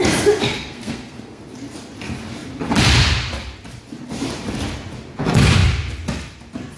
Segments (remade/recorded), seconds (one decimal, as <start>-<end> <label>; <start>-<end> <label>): 0.0-0.4 recorded; 0.4-1.4 remade; 1.4-6.8 recorded